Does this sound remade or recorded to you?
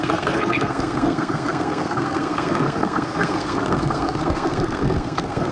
remade